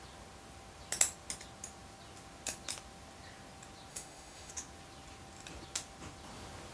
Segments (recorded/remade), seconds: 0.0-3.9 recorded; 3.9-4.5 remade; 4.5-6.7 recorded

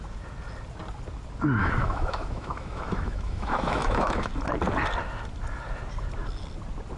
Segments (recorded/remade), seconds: 0.0-1.6 recorded; 1.6-4.3 remade; 4.3-7.0 recorded